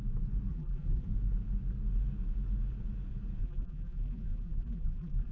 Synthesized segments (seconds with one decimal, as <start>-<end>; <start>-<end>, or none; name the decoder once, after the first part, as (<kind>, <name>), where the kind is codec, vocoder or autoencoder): 0.5-1.1 (vocoder, BigVGAN v2); 3.4-5.3